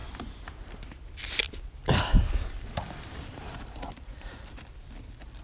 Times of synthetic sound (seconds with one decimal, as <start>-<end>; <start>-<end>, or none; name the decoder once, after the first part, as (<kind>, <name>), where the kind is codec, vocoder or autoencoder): 0.0-0.5 (vocoder, BigVGAN v2); 2.1-5.4